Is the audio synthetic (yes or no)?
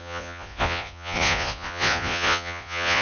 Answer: yes